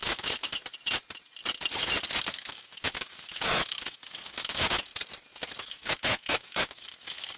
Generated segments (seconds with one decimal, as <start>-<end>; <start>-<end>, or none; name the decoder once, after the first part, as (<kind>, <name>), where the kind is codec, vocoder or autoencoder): 0.0-0.5 (autoencoder, DAC-VAE); 2.3-4.9; 5.6-7.4